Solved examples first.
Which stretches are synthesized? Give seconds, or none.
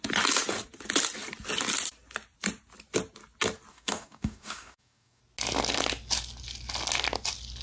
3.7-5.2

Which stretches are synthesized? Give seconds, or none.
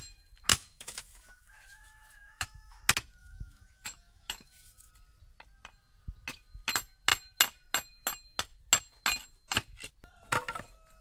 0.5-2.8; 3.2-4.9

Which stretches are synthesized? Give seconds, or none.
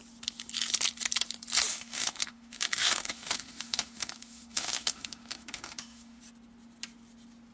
1.7-6.2